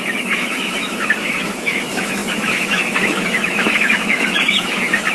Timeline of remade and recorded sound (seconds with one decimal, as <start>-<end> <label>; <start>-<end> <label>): 0.0-5.1 remade